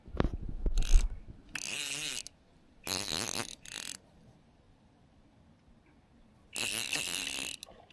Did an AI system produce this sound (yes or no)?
no